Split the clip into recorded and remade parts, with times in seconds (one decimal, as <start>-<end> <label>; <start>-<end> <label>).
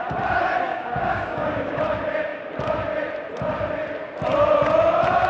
0.0-0.7 recorded; 0.7-1.8 remade; 1.8-5.3 recorded